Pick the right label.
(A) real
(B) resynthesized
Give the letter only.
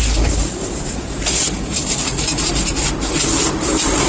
B